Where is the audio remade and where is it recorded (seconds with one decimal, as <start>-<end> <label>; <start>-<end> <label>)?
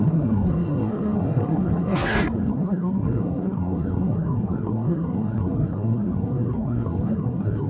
0.0-7.7 remade